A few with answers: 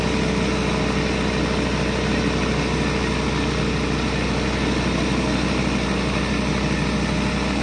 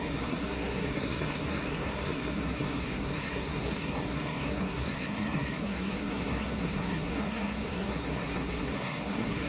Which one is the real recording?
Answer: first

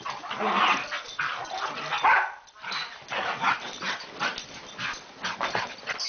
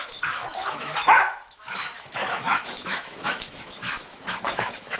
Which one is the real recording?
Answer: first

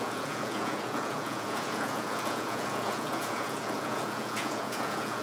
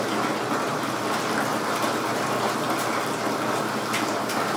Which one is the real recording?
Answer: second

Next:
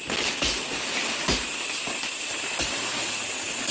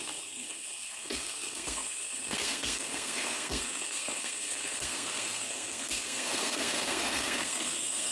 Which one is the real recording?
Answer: first